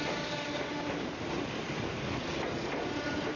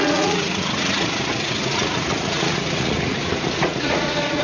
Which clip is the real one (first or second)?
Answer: first